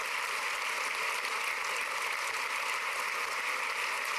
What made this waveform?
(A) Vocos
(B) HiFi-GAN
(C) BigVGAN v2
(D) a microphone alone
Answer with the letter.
D